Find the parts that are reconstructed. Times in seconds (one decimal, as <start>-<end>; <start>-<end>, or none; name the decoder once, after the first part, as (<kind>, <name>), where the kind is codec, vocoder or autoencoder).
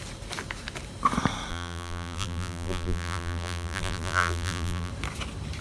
1.5-4.9 (vocoder, BigVGAN v2)